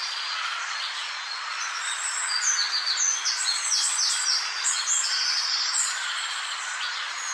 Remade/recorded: remade